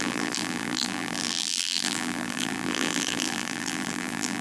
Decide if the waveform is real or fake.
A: fake